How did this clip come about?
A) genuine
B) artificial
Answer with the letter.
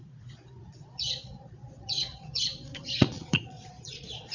B